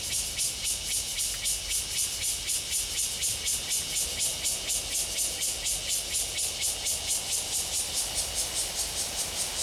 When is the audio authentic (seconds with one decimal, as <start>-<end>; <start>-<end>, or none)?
0.0-9.6